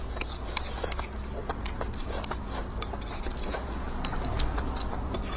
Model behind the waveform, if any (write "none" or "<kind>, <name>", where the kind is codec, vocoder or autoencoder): none